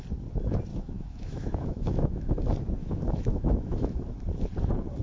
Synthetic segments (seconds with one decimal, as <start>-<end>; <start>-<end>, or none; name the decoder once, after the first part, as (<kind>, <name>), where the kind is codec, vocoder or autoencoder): 0.7-2.3 (autoencoder, DAC-VAE); 2.8-4.0